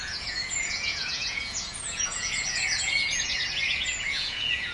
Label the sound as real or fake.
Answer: fake